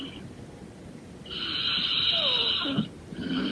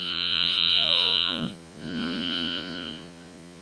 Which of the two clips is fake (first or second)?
second